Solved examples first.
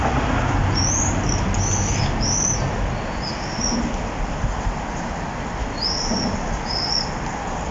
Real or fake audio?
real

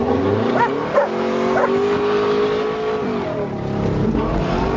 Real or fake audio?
real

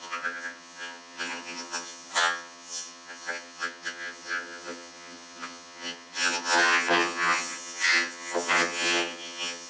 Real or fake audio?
fake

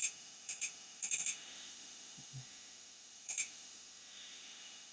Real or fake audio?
fake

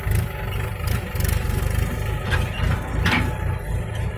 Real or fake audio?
real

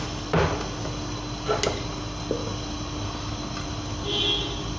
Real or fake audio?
real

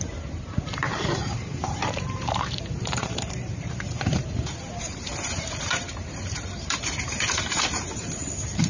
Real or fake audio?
fake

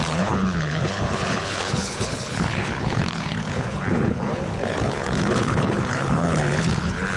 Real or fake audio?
fake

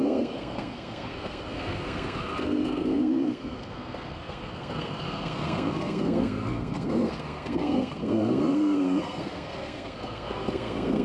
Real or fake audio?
fake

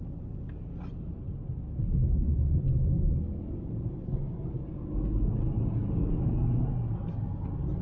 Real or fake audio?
real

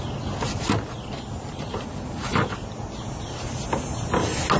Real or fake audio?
real